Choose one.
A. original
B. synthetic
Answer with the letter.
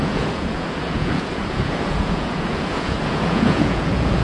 B